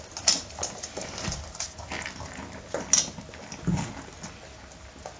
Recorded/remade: recorded